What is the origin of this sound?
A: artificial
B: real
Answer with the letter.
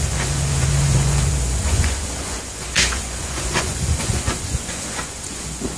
A